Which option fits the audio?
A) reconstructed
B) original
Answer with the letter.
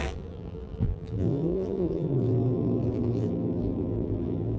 A